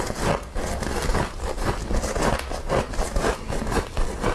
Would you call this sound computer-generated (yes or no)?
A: no